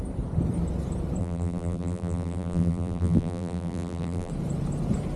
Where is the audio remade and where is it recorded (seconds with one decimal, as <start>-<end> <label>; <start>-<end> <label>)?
0.0-1.2 recorded; 1.2-4.3 remade; 4.3-5.2 recorded